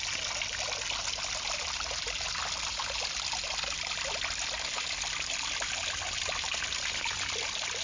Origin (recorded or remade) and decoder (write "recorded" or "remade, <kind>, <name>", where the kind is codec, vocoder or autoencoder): recorded